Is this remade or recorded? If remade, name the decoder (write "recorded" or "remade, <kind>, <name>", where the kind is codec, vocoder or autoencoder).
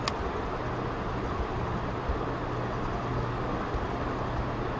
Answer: recorded